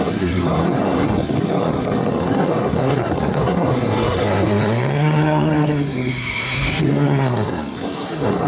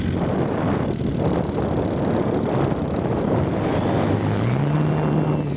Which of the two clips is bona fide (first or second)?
second